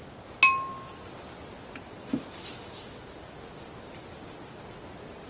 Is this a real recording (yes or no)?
yes